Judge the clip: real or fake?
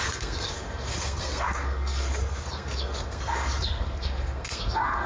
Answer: fake